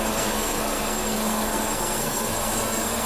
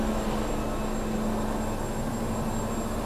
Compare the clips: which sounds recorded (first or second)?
second